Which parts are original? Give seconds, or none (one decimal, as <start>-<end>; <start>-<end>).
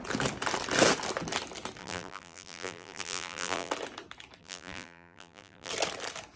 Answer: 0.0-1.8; 3.7-4.4; 5.7-6.4